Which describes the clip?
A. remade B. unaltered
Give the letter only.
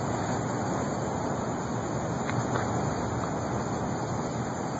A